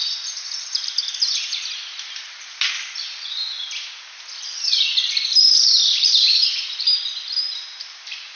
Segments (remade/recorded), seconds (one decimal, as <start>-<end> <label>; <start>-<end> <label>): 0.0-8.4 recorded